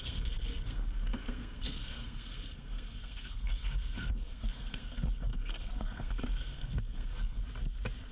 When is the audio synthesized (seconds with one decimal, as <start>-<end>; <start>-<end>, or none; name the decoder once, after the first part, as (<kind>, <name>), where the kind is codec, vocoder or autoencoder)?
0.0-7.4 (codec, SNAC)